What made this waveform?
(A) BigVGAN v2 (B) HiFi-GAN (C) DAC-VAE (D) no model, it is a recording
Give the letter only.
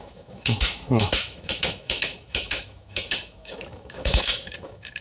C